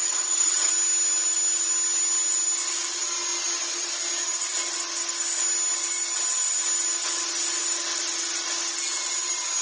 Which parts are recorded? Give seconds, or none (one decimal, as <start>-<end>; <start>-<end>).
0.7-9.6